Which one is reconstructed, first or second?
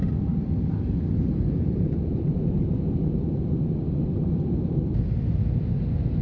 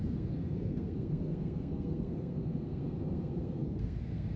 second